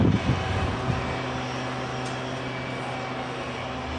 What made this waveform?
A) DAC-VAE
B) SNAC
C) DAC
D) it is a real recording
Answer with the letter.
D